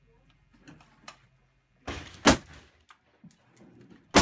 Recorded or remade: recorded